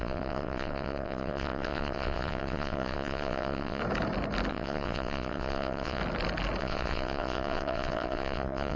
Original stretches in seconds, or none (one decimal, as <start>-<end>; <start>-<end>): 3.8-4.5; 6.0-6.6